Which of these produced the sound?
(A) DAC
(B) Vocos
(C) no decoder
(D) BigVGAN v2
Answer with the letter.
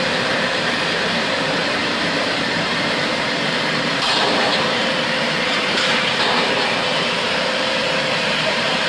D